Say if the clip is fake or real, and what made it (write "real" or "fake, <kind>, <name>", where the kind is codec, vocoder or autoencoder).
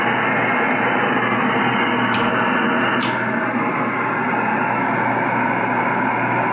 real